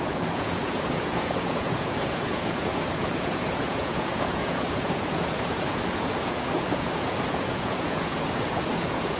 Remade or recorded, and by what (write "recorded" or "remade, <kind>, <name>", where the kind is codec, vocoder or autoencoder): remade, vocoder, Vocos